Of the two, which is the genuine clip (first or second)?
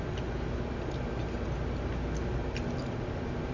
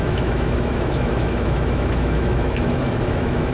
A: first